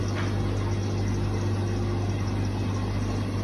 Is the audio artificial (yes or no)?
no